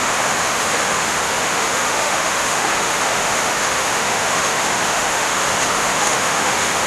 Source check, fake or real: fake